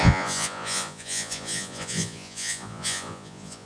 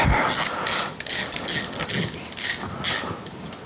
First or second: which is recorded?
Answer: second